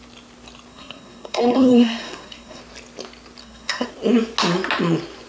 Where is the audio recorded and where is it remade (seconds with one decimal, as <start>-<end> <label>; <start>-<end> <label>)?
0.0-0.7 recorded; 0.7-2.6 remade; 2.6-3.4 recorded; 3.4-3.9 remade; 3.9-5.3 recorded

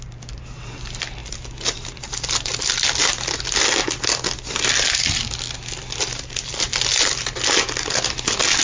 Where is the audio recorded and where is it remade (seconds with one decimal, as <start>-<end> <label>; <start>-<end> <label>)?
0.0-8.6 recorded

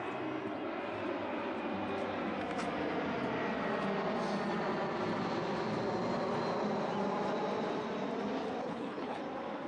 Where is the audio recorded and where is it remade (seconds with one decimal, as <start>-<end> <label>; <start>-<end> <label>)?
0.0-8.6 recorded; 8.6-9.2 remade; 9.2-9.7 recorded